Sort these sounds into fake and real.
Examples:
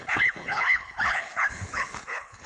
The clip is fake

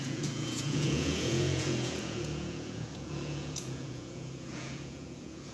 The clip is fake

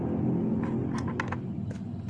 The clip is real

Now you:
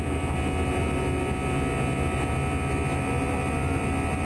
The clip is real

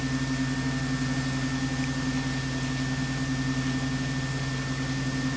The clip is real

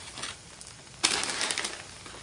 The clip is real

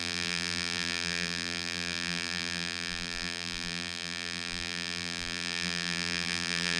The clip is fake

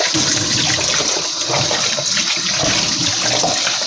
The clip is real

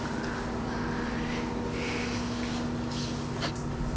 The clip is real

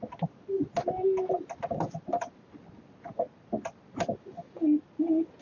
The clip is real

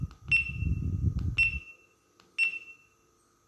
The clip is real